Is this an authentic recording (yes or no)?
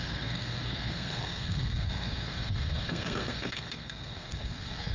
no